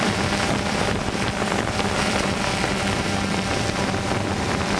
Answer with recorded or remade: remade